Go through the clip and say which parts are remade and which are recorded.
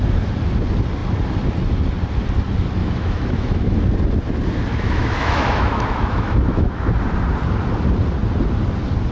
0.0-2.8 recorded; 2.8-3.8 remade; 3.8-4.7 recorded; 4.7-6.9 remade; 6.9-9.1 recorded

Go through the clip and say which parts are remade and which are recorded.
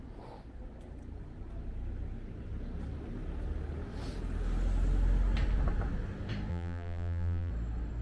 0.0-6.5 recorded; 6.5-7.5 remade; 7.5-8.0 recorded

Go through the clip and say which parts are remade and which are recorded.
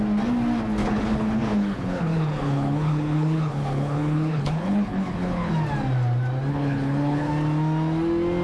0.0-0.8 recorded; 0.8-5.5 remade; 5.5-6.5 recorded; 6.5-7.3 remade; 7.3-8.4 recorded